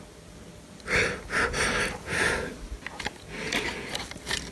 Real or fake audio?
real